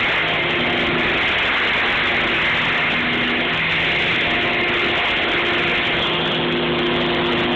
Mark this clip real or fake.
real